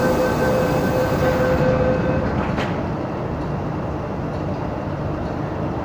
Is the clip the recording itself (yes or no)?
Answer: yes